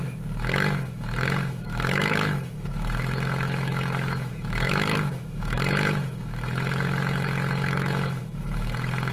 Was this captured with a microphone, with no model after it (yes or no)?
no